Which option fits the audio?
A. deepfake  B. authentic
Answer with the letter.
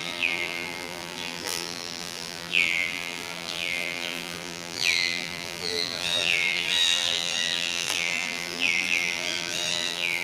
A